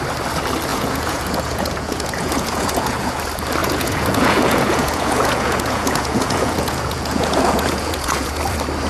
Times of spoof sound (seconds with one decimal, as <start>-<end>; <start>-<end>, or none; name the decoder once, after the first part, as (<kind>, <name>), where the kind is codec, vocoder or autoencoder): 0.7-3.2 (vocoder, Vocos); 3.6-8.4